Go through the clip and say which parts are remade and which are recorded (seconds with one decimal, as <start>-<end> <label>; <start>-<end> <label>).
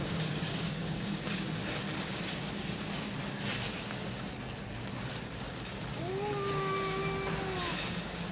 0.0-1.6 remade; 1.6-6.0 recorded; 6.0-7.0 remade; 7.0-8.3 recorded